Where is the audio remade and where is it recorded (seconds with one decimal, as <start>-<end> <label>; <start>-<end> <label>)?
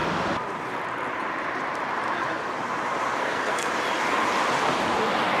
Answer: 0.0-3.2 recorded; 3.2-3.7 remade; 3.7-5.4 recorded